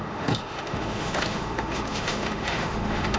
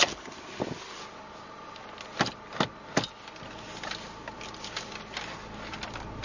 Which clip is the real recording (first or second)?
second